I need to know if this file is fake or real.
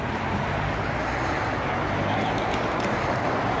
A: real